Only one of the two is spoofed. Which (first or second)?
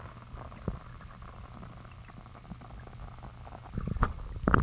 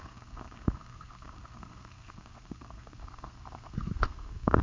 second